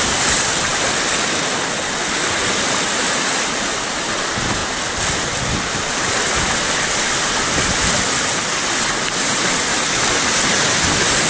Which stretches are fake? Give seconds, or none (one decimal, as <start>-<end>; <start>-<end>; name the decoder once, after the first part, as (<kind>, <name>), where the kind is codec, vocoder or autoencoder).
none